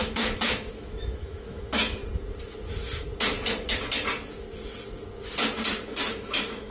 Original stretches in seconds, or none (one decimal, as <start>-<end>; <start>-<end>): 2.0-5.8